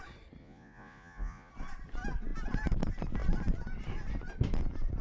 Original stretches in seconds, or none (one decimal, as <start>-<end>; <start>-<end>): 0.0-0.4; 1.5-5.0